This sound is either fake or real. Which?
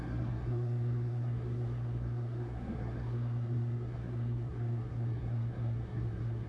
fake